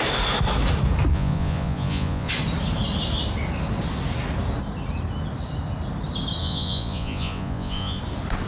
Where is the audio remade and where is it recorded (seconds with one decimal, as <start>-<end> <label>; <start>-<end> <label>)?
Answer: 0.0-1.1 recorded; 1.1-2.3 remade; 2.3-6.4 recorded; 6.4-8.0 remade; 8.0-8.5 recorded